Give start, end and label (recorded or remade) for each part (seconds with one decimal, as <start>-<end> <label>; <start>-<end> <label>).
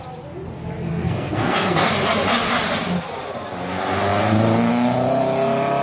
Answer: 0.0-0.9 recorded; 0.9-1.9 remade; 1.9-5.8 recorded